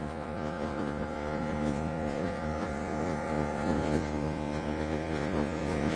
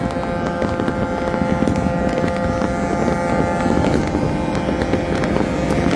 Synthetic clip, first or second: first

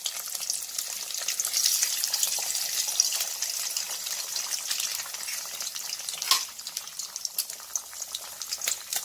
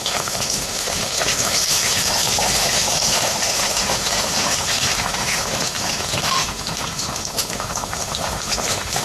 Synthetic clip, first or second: second